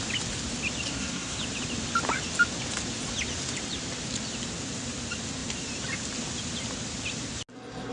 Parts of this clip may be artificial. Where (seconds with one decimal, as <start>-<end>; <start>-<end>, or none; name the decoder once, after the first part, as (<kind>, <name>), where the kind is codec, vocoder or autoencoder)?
0.9-1.4 (codec, SNAC)